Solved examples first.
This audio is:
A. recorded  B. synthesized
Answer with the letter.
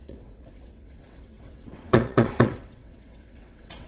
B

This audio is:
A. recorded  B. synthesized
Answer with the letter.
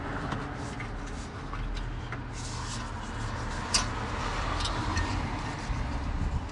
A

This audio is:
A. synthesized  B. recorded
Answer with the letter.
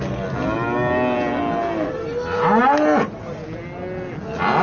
B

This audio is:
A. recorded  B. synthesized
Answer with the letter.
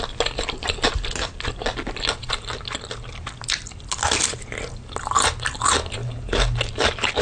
A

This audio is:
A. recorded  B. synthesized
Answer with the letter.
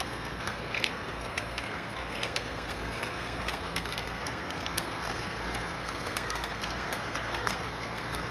B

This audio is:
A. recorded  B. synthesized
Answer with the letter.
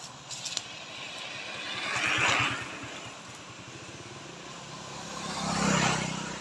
A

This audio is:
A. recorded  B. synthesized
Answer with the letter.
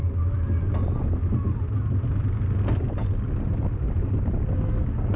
A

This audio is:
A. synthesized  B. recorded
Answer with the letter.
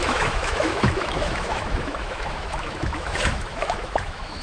A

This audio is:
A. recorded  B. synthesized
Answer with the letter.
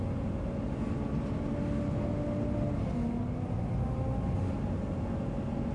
A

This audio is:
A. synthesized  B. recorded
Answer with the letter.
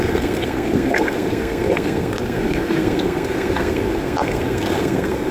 A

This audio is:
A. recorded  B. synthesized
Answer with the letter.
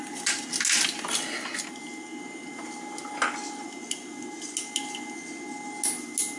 A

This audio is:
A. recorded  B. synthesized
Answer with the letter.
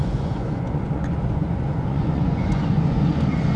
B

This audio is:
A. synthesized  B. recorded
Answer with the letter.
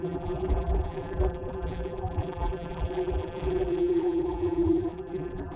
A